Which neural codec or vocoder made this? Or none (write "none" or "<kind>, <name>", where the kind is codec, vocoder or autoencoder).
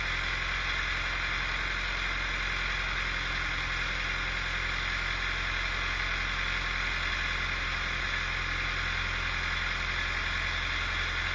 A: none